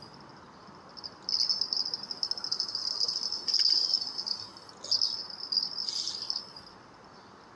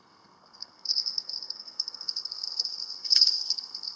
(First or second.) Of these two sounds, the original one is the first